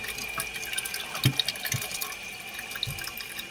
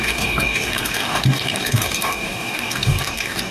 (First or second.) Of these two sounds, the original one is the first